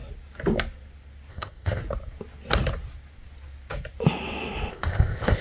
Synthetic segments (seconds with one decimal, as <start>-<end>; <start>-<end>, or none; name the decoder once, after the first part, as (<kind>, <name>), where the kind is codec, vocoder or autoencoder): 1.3-1.8 (codec, ZipCodec); 4.7-5.4